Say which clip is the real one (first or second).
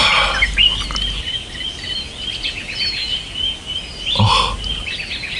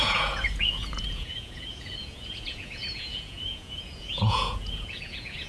first